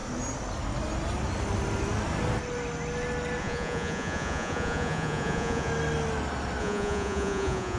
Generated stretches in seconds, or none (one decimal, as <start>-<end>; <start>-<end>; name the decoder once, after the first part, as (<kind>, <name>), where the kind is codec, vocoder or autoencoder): 3.4-5.7 (vocoder, Vocos); 6.6-7.8